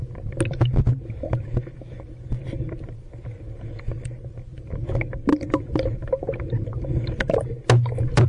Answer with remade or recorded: recorded